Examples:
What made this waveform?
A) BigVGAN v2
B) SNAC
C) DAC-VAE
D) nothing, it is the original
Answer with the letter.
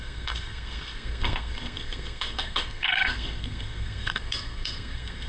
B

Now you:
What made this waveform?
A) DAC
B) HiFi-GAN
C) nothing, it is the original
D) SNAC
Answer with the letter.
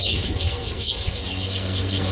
D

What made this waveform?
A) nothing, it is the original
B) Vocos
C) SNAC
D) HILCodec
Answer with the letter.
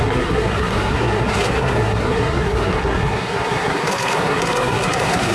C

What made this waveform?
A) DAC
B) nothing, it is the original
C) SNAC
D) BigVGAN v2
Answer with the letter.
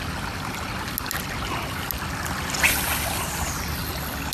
B